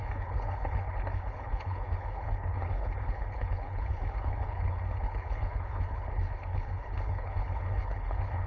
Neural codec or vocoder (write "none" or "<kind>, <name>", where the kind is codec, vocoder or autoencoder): codec, HILCodec